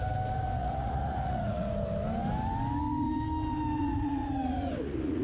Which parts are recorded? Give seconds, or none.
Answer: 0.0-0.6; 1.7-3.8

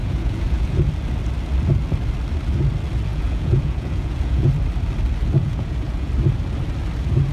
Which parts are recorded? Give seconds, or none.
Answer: 0.8-3.1; 4.5-5.4; 6.1-7.3

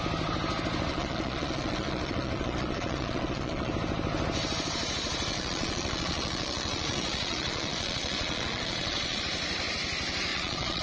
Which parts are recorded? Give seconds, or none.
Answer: 0.0-0.9; 3.7-5.3; 9.2-10.3

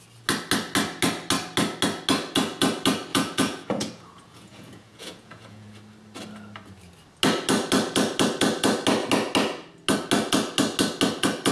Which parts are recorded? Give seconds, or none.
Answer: 0.0-3.1; 5.8-11.5

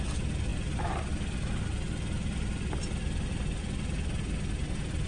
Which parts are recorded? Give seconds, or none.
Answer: 0.0-5.1

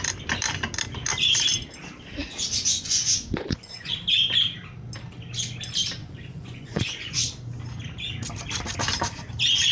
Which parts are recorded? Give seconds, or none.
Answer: 0.0-2.7; 3.9-6.0; 7.2-9.7

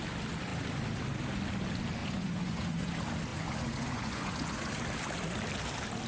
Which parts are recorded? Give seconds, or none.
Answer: 0.0-2.0; 2.9-3.3; 4.7-6.1